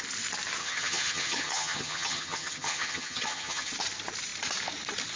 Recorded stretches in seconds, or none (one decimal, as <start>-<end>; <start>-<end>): 0.0-0.6; 3.7-5.2